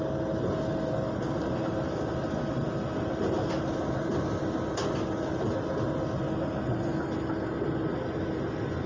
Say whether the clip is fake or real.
real